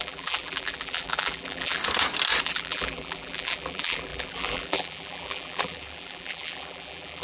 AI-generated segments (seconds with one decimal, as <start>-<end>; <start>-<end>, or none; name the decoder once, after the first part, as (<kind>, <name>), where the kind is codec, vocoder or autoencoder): 0.0-1.8 (vocoder, BigVGAN v2); 2.4-7.2